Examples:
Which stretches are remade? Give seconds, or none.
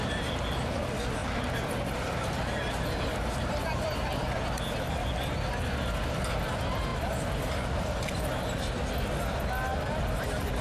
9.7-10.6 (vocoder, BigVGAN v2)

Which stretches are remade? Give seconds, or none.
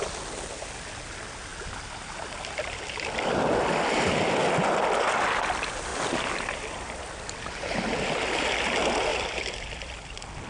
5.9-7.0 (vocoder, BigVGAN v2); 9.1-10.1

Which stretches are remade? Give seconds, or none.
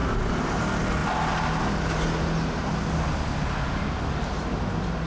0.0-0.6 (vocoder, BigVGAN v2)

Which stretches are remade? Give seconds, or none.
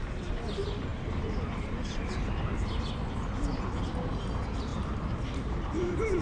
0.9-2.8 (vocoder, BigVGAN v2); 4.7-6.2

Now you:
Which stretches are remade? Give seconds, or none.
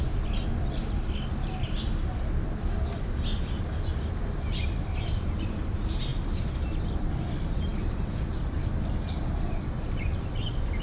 none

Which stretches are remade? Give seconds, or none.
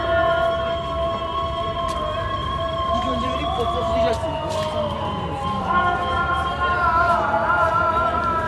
2.4-3.4 (vocoder, BigVGAN v2)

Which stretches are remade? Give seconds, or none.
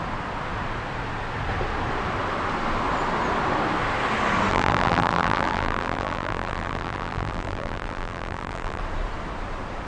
4.5-8.8 (vocoder, BigVGAN v2)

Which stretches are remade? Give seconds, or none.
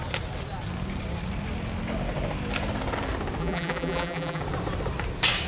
3.4-4.4 (vocoder, BigVGAN v2)